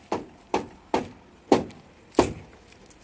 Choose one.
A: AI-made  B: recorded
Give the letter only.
B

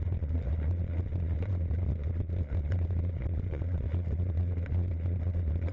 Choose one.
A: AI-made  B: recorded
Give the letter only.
A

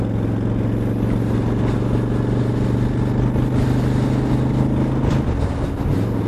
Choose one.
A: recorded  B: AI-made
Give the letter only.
A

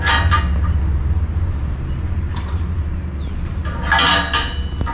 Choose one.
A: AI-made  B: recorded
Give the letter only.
B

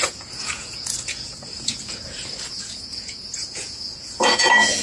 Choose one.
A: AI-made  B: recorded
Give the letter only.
A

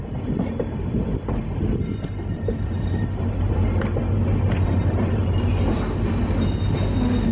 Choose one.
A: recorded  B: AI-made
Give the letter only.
A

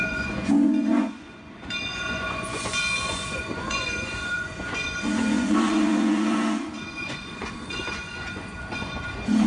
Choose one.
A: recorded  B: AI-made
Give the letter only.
B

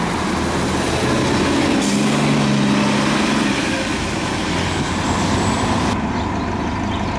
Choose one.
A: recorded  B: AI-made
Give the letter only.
A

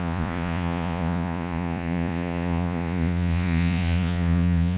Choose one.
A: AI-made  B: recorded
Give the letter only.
A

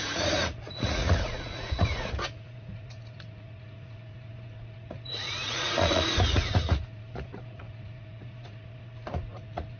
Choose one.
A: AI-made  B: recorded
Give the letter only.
A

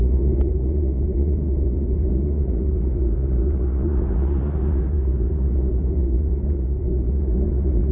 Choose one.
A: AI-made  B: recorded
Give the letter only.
A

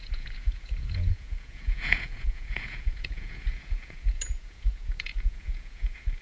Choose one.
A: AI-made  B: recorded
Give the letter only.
A